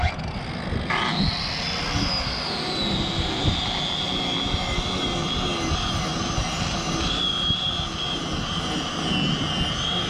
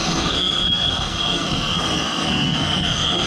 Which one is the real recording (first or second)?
first